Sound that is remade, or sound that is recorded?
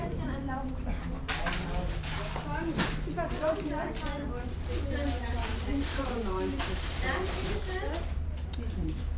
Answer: remade